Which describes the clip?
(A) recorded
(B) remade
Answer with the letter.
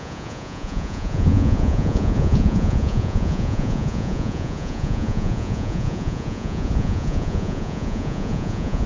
B